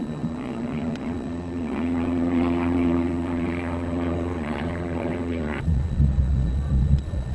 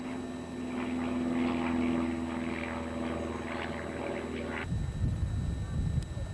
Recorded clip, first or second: second